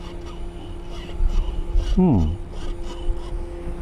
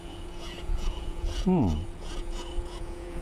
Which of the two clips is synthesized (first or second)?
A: second